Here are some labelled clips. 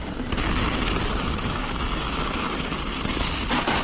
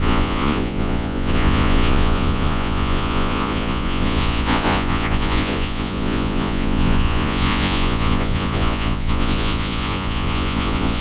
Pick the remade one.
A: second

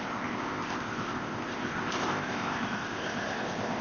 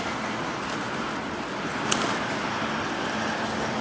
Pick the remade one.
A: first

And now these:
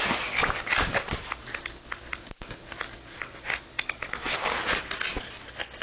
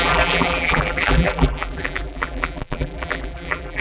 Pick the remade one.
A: second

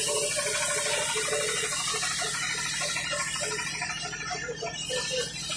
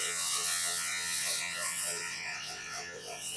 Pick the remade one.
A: second